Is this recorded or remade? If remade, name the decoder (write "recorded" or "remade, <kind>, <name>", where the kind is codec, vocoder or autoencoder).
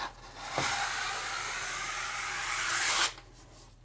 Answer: recorded